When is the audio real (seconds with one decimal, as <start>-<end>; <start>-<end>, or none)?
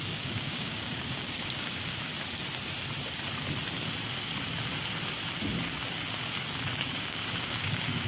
2.1-7.0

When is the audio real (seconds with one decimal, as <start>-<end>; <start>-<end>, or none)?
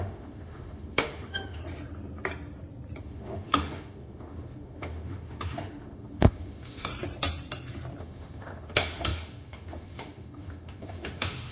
1.6-3.0; 6.9-8.0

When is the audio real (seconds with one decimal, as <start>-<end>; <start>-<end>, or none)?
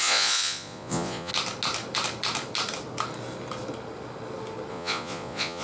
1.3-4.7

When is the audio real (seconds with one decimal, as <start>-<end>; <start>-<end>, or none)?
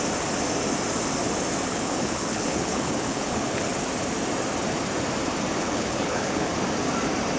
0.0-1.7; 3.7-5.6; 6.5-7.4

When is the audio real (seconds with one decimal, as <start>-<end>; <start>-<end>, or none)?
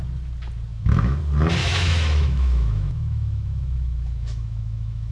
0.0-0.7; 1.2-1.6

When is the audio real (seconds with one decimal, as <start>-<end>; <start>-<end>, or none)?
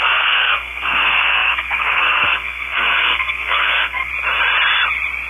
4.1-5.3